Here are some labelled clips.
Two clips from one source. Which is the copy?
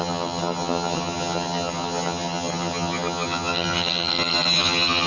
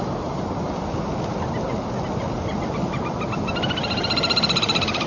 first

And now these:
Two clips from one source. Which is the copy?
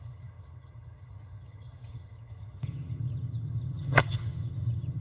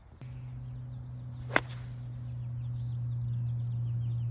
first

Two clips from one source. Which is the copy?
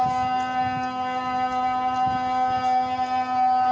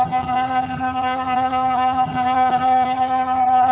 second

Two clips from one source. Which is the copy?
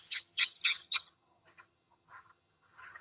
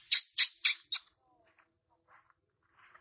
first